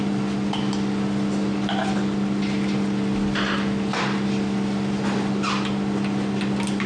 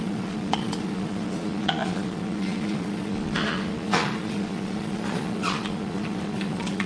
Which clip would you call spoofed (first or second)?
second